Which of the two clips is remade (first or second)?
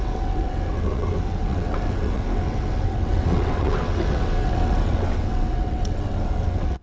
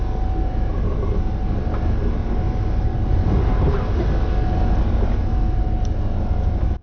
first